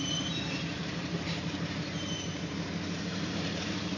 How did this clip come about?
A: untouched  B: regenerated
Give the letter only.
B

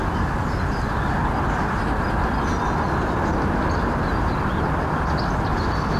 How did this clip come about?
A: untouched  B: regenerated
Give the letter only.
A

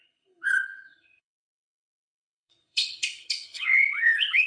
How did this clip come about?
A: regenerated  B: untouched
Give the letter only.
A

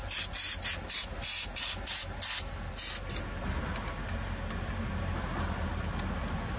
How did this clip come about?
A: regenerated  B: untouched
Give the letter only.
B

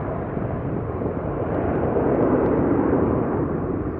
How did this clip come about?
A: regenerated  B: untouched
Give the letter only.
A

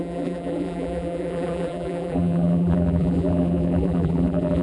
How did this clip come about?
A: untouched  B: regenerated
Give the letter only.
B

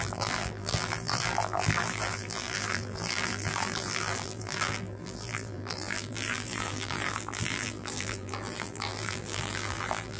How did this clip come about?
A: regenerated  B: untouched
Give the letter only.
A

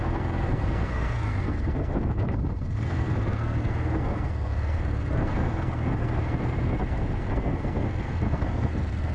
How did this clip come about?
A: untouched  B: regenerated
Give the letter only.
B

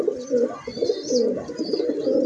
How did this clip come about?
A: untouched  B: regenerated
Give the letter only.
A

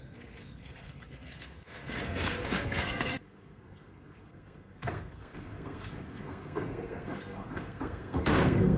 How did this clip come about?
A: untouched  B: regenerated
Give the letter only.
B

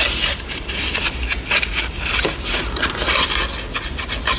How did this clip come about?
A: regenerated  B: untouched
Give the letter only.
B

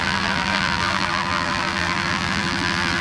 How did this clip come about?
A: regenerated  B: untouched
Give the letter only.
A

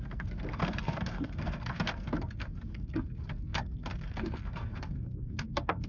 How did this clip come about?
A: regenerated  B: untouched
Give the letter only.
A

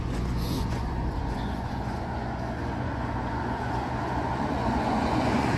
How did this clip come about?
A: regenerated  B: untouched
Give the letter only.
A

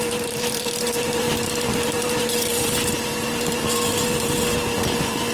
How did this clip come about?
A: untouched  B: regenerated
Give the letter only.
B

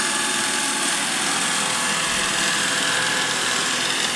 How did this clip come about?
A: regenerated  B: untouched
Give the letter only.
B